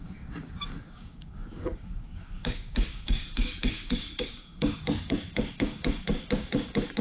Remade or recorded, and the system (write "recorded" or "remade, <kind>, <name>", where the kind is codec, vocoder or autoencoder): remade, codec, DAC